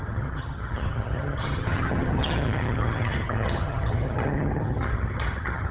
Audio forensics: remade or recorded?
remade